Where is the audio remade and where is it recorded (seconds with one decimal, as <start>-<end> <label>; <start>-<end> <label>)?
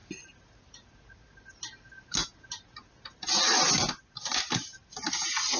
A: 0.0-5.6 recorded